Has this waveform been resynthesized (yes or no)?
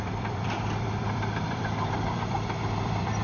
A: yes